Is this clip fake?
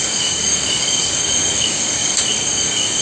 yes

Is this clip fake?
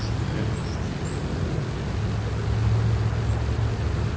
no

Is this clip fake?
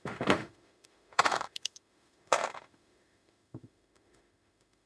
yes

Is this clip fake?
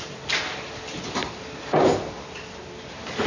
no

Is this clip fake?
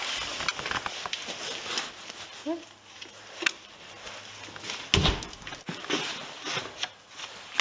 no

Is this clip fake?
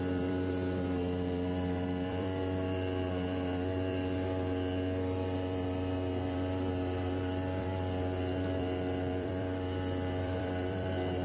yes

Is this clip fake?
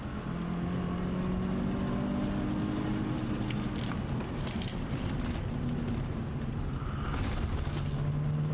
no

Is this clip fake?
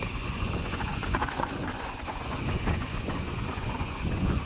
yes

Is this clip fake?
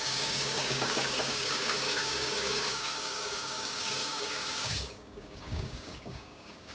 yes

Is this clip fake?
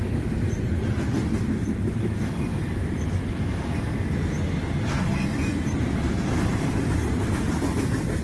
no